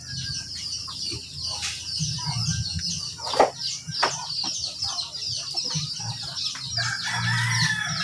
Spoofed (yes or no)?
no